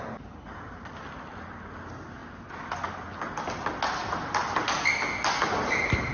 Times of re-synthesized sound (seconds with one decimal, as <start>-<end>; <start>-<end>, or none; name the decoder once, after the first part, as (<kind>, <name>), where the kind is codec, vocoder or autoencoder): none